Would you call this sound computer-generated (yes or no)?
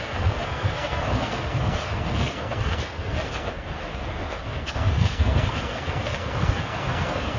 yes